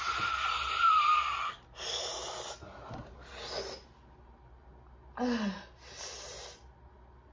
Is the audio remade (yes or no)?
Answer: no